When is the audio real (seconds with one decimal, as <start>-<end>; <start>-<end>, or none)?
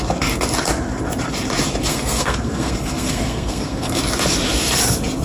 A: 0.0-1.8; 4.0-5.2